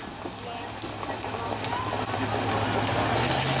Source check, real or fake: real